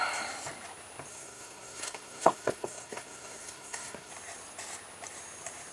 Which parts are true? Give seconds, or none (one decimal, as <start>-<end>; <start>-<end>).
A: 0.0-1.1; 4.1-5.7